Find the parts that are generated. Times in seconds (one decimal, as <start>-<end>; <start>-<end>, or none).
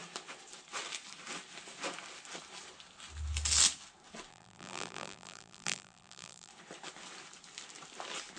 4.3-6.5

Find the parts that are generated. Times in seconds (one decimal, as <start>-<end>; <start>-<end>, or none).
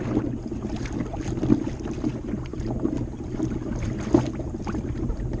none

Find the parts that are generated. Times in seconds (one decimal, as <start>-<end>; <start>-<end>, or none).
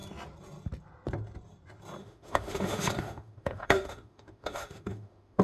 2.0-5.4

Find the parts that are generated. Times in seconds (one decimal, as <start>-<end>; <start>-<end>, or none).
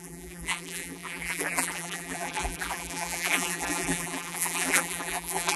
0.0-5.6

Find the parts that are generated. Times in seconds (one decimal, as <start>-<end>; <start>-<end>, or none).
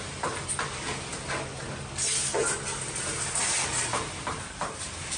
none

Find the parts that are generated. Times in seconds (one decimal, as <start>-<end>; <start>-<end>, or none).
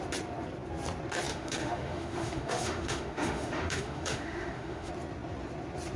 1.3-4.9